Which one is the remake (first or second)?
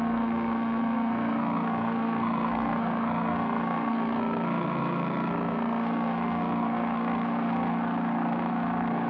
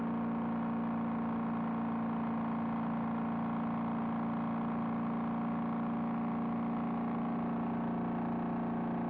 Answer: first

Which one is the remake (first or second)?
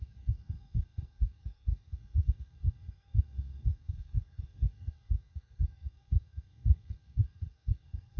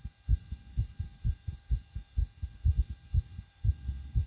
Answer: first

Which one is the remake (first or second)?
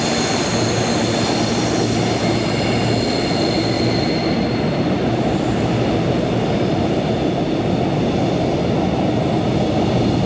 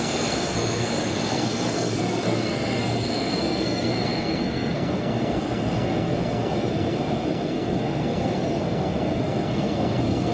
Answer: second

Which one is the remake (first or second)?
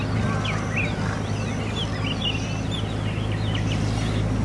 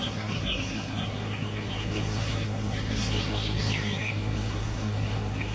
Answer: second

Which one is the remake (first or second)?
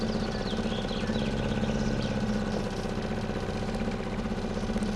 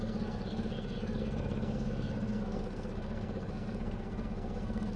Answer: second